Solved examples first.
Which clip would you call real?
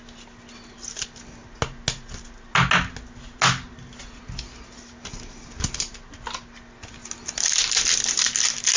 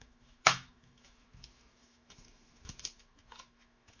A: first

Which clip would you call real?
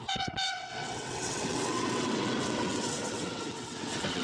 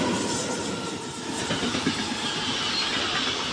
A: second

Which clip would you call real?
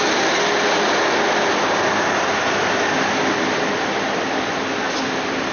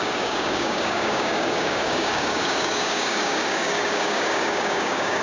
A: first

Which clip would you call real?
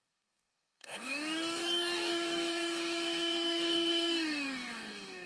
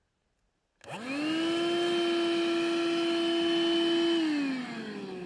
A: second